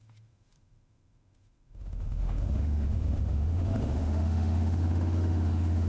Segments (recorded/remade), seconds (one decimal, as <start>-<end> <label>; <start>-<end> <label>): 0.0-5.9 remade